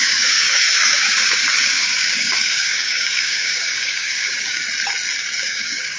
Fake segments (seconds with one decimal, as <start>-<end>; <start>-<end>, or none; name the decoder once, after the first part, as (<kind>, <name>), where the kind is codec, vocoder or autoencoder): 0.0-4.6 (codec, DAC); 5.4-6.0